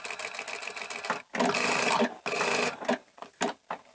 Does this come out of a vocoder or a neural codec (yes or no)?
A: no